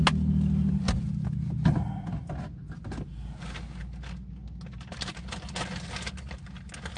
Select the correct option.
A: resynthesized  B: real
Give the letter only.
B